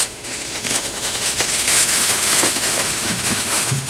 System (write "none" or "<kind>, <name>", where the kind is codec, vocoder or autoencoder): autoencoder, DAC-VAE